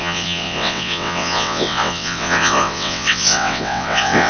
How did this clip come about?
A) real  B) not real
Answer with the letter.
B